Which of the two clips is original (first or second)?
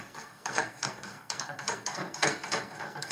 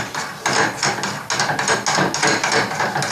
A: second